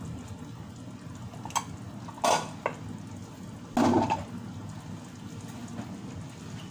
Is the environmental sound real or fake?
real